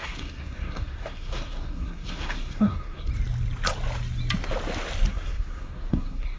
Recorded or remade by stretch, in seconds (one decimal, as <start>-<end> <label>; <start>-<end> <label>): 0.0-3.1 remade; 3.1-5.1 recorded; 5.1-6.4 remade